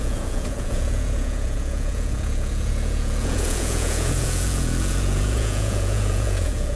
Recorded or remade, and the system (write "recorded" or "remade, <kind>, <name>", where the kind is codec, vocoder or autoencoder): remade, vocoder, Vocos